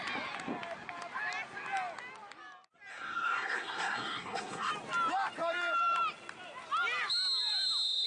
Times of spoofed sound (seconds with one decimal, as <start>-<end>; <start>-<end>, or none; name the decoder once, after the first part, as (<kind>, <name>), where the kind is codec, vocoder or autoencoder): 2.9-4.7 (codec, SNAC)